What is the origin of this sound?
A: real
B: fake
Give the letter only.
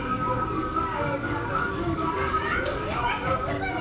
B